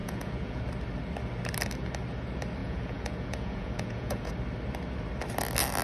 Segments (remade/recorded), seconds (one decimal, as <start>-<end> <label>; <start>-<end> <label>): 0.0-0.6 remade; 0.6-2.6 recorded; 2.6-4.3 remade; 4.3-5.8 recorded